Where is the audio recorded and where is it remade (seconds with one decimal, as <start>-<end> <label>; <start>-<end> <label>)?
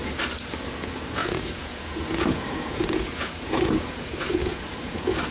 0.0-0.7 recorded; 0.7-5.3 remade